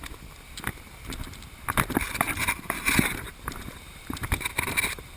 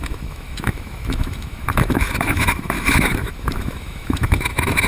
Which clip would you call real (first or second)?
first